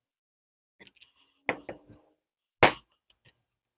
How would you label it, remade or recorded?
recorded